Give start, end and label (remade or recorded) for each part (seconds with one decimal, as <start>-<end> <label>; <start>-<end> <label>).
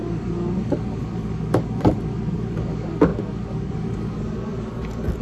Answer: 0.0-5.2 remade